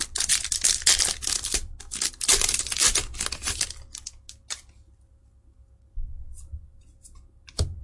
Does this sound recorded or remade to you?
recorded